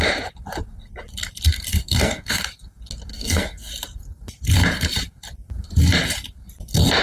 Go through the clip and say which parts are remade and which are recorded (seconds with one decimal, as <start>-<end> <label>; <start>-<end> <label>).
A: 0.0-1.7 recorded; 1.7-2.4 remade; 2.4-3.1 recorded; 3.1-3.7 remade; 3.7-7.0 recorded